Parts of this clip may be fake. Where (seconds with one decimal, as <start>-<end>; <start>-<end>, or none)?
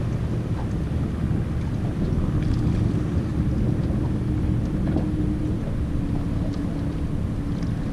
none